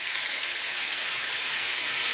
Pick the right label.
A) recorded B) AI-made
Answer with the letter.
B